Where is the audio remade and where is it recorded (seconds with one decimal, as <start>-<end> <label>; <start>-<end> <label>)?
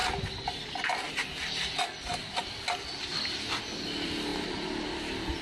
0.0-5.4 recorded